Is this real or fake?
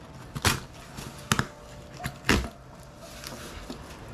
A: real